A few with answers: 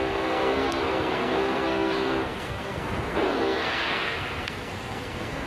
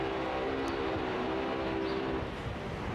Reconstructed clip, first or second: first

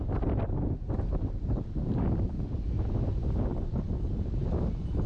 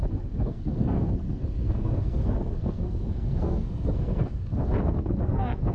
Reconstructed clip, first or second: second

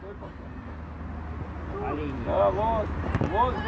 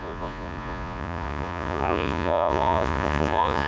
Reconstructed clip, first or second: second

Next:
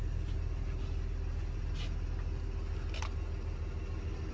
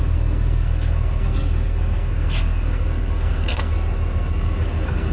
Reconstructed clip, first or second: second